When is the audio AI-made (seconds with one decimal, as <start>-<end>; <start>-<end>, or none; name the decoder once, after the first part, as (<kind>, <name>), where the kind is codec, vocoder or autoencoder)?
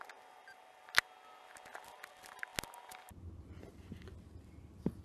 none